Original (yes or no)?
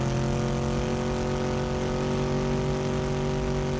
yes